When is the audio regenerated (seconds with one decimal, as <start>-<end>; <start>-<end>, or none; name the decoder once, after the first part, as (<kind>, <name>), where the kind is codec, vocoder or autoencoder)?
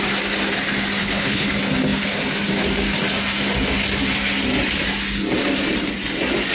1.0-1.5 (codec, HILCodec)